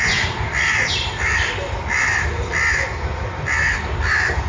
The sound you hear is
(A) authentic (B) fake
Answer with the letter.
A